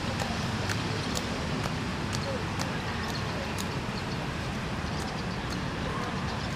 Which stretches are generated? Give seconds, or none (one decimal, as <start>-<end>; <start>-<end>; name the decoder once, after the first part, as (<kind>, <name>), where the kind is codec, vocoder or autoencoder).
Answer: 0.0-1.9 (vocoder, BigVGAN v2); 3.9-6.6